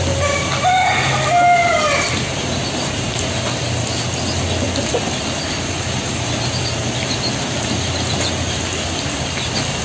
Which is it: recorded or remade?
recorded